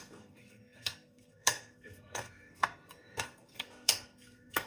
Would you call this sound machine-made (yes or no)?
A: yes